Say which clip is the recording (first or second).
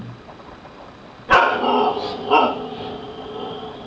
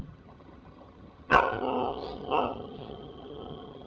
first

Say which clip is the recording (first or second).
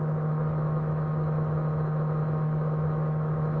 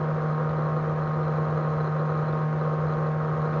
second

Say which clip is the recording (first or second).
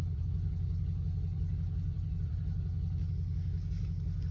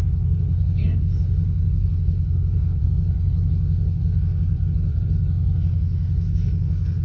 first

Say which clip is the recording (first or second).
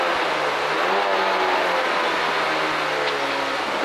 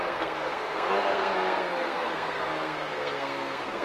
first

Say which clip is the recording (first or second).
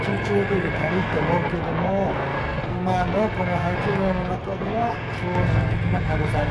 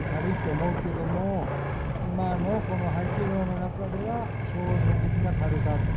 second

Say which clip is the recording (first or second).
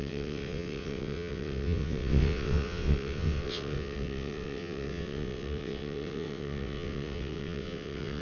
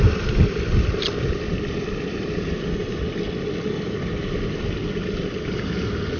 second